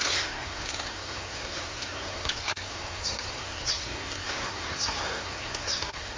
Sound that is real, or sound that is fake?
fake